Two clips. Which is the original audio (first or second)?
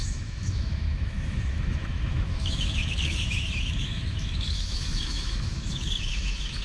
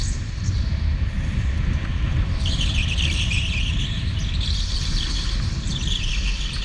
second